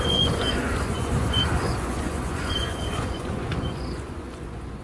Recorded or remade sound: remade